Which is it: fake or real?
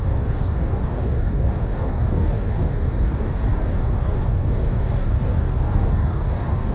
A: fake